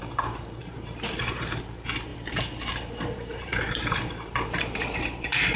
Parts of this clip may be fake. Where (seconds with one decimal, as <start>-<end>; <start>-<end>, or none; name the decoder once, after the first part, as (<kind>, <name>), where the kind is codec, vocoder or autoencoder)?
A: 0.6-1.6 (vocoder, BigVGAN v2); 2.1-5.6